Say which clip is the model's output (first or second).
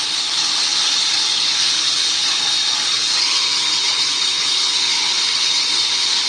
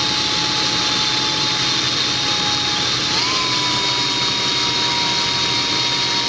first